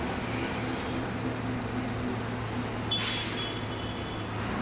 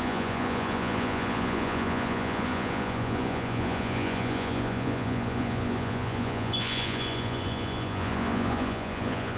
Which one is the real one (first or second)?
first